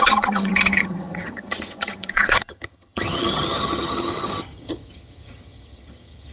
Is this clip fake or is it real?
fake